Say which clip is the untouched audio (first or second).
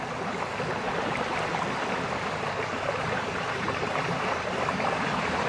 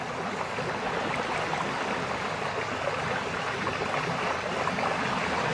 second